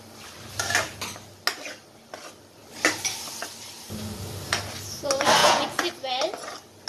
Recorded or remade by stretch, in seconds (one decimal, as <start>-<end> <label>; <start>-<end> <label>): 0.0-5.4 recorded; 5.4-5.9 remade; 5.9-6.9 recorded